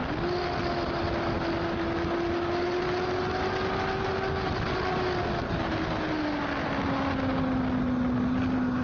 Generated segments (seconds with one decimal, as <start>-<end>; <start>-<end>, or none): none